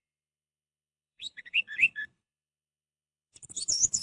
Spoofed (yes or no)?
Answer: yes